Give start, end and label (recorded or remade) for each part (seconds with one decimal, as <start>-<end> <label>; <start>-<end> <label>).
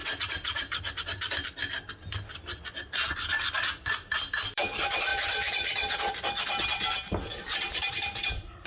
0.0-4.5 recorded; 4.5-8.7 remade